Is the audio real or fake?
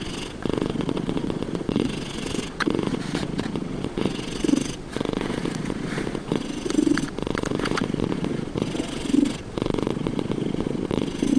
fake